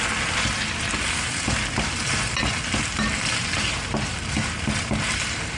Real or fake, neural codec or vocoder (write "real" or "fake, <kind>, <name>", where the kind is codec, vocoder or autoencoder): real